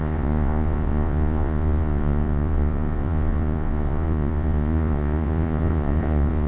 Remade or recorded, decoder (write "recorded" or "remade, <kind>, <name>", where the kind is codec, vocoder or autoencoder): remade, vocoder, Vocos